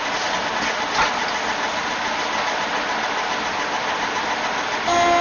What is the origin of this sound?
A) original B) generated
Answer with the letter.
A